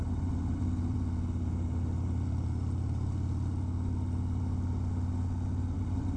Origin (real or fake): real